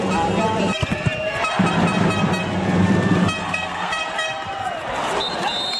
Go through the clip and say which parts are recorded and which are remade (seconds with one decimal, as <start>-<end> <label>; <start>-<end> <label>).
0.0-3.4 recorded; 3.4-3.9 remade; 3.9-5.8 recorded